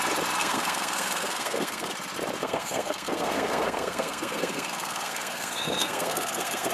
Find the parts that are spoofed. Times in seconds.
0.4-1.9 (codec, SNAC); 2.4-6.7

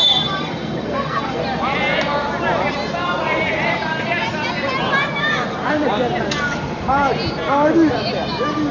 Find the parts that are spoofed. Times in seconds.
0.4-1.4 (codec, SNAC)

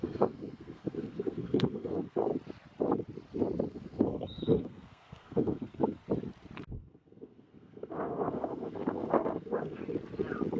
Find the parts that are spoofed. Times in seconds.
0.0-2.3 (codec, SNAC); 3.7-6.0; 6.7-9.8

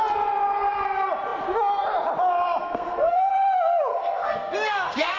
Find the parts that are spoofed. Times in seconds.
2.6-3.3 (codec, SNAC); 3.9-5.2

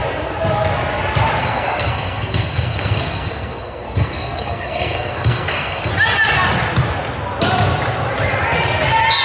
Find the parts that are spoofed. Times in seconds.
1.4-5.9 (codec, SNAC)